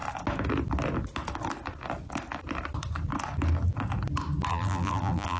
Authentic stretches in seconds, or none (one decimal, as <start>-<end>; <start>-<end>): 0.0-4.5